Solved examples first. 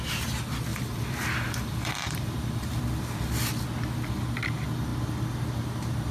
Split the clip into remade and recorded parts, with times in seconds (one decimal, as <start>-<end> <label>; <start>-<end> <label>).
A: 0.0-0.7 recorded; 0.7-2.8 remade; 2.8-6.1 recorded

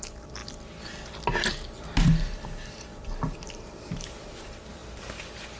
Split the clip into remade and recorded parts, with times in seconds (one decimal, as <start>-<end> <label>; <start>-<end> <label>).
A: 0.0-0.4 remade; 0.4-3.0 recorded; 3.0-5.6 remade

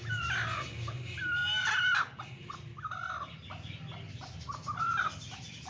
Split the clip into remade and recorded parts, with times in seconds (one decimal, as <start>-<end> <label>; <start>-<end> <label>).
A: 0.0-5.7 recorded

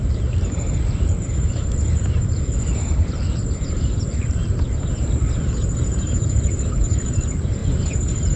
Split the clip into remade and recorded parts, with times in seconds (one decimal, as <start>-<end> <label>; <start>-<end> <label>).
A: 0.0-7.6 remade; 7.6-8.4 recorded